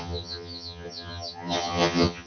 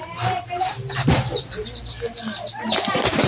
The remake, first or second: first